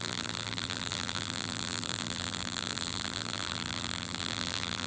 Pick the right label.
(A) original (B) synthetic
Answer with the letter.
B